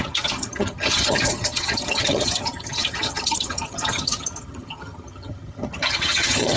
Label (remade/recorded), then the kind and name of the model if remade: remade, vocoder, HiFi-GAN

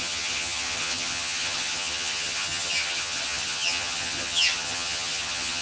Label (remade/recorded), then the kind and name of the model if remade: remade, vocoder, HiFi-GAN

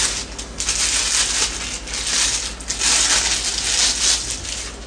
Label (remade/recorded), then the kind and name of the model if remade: recorded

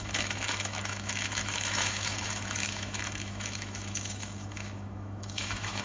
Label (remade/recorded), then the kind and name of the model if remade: remade, autoencoder, DAC-VAE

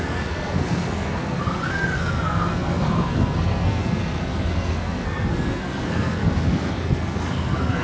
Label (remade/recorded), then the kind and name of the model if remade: remade, codec, SNAC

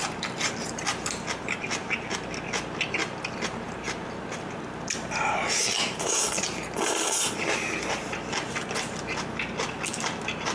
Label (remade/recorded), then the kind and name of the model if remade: recorded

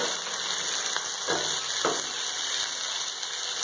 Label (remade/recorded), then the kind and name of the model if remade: recorded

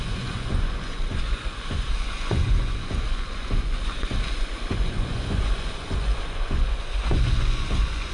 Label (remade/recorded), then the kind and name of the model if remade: remade, vocoder, Vocos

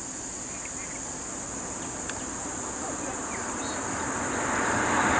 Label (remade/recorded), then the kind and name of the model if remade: recorded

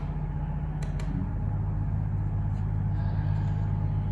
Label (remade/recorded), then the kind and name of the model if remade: recorded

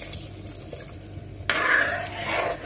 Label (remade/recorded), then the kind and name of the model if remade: recorded